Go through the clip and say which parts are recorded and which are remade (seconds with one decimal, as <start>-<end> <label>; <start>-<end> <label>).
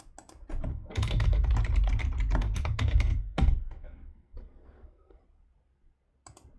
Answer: 0.0-0.7 recorded; 0.7-1.5 remade; 1.5-2.4 recorded; 2.4-5.2 remade; 5.2-6.6 recorded